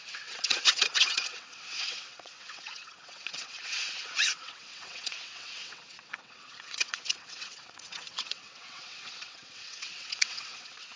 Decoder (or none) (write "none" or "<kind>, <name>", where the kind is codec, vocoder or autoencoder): vocoder, WaveNeXt